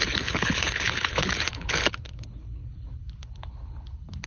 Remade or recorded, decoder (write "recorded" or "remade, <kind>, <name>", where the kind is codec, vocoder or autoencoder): remade, codec, HILCodec